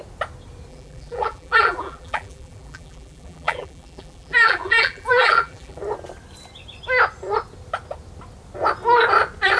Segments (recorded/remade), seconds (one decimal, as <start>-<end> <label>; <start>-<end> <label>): 0.0-0.7 recorded; 0.7-5.8 remade; 5.8-9.6 recorded